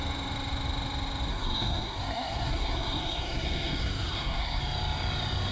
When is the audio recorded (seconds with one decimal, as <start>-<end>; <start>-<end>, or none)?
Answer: 0.0-1.3; 4.6-5.5